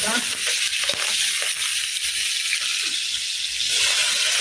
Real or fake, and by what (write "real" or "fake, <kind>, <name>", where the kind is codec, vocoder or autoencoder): real